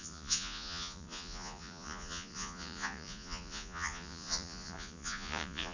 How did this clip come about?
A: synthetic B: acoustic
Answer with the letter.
A